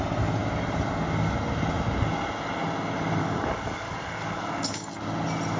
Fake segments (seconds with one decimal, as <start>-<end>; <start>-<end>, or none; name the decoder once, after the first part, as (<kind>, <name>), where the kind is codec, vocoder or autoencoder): 3.2-4.9 (codec, DAC)